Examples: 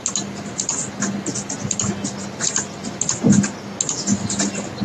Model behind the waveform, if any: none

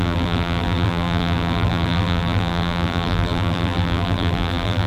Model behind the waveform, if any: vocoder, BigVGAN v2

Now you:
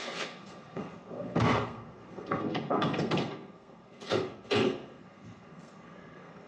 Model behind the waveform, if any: codec, SNAC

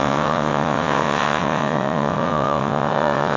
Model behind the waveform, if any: vocoder, WaveNeXt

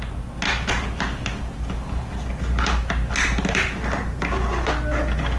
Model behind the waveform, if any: none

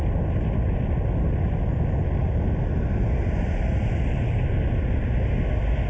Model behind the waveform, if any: none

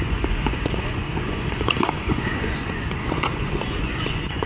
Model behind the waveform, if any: vocoder, Vocos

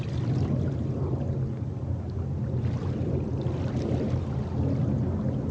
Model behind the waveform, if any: none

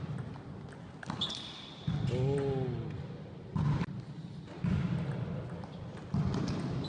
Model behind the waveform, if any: none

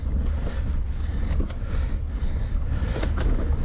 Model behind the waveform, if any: none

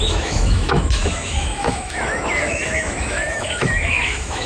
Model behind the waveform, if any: autoencoder, DAC-VAE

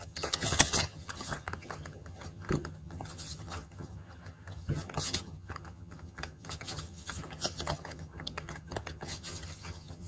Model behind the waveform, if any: vocoder, HiFi-GAN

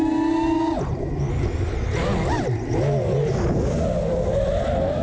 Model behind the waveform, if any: none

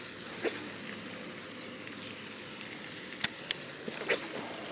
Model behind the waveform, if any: none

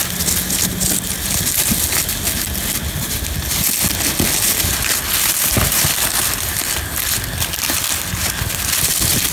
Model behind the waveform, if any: none